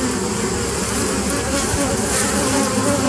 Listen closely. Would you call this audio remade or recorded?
recorded